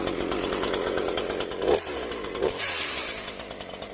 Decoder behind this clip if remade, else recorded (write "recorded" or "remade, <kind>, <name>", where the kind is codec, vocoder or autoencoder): recorded